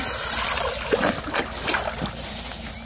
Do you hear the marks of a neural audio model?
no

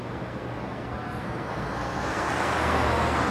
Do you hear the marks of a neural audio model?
yes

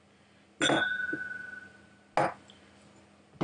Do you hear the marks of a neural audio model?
no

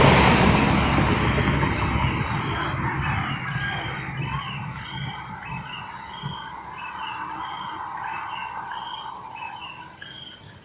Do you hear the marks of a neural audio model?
no